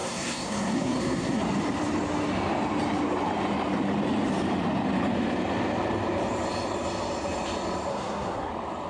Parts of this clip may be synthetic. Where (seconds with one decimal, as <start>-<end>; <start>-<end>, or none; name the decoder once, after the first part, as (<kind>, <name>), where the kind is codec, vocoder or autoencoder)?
0.0-1.4 (codec, SNAC); 7.9-8.5